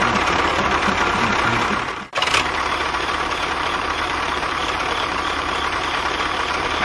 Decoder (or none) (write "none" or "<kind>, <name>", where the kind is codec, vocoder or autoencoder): vocoder, BigVGAN v2